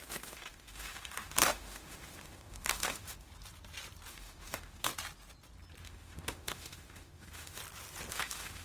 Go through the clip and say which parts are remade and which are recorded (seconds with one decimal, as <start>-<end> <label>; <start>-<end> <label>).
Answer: 0.0-3.3 remade; 3.3-4.1 recorded; 4.1-4.9 remade; 4.9-5.8 recorded; 5.8-7.6 remade; 7.6-8.1 recorded; 8.1-8.6 remade